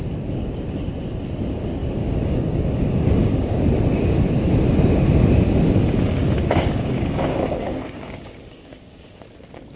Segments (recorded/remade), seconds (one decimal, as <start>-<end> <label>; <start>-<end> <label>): 0.0-1.8 recorded; 1.8-3.6 remade; 3.6-6.2 recorded; 6.2-9.1 remade; 9.1-9.8 recorded